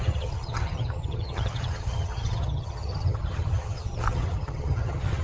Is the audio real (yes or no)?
no